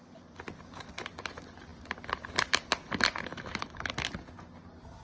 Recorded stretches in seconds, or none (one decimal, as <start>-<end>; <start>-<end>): 0.0-3.3; 3.9-5.0